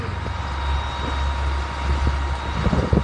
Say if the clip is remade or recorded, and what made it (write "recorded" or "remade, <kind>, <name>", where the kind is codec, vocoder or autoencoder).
recorded